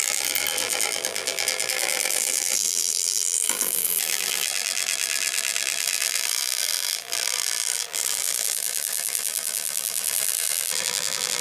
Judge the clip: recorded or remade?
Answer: remade